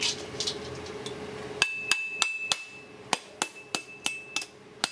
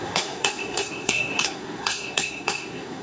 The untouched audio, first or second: first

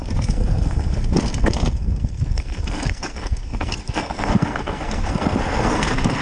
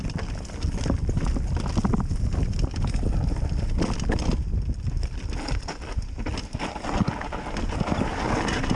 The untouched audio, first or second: second